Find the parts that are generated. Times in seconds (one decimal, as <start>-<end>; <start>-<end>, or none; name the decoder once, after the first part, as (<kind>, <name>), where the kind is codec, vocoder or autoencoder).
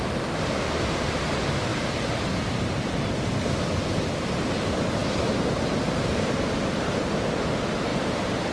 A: 5.0-6.4 (vocoder, BigVGAN v2); 7.9-8.5